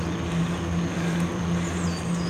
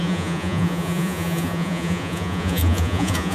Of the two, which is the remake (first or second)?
second